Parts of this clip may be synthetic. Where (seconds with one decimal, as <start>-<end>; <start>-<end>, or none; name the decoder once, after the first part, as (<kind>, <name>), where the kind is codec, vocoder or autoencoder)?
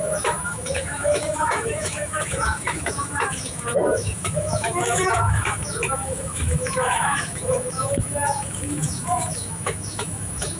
0.0-10.6 (autoencoder, DAC-VAE)